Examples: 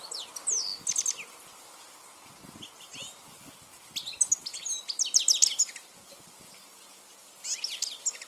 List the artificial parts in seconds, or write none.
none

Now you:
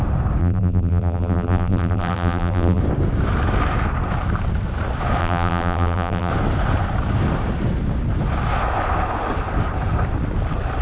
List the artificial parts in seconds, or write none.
0.4-2.8; 5.2-6.3

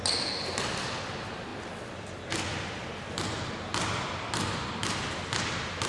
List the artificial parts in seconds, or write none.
1.5-2.2